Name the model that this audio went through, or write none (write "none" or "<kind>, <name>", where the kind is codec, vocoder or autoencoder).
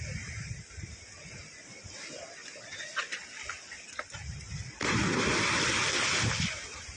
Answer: none